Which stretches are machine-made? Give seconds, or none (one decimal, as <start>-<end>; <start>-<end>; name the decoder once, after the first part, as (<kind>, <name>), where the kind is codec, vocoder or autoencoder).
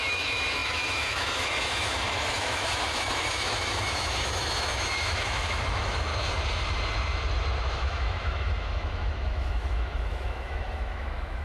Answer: 0.0-6.1 (autoencoder, DAC-VAE); 7.7-11.4